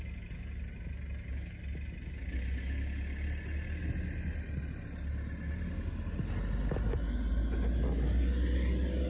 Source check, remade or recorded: recorded